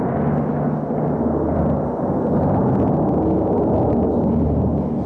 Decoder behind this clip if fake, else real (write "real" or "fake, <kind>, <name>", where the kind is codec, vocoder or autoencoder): real